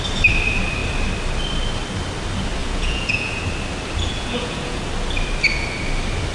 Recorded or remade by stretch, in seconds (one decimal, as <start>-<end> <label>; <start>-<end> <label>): 0.0-2.6 recorded; 2.6-3.4 remade; 3.4-4.1 recorded; 4.1-4.8 remade; 4.8-6.3 recorded